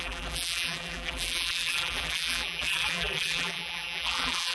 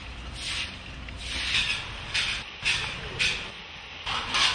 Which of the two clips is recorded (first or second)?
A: second